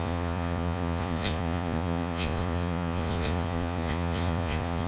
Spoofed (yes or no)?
yes